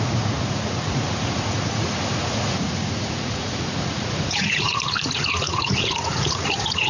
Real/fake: fake